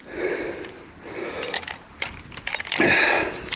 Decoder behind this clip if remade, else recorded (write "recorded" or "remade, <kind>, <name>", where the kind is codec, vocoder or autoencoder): recorded